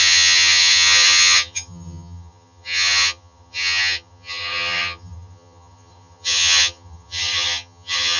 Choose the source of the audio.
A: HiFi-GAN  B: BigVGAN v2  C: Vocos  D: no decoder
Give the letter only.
A